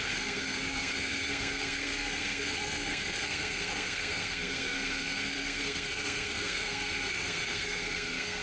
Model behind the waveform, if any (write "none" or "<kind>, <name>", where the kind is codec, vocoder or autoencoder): codec, SNAC